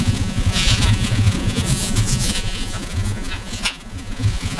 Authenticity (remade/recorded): remade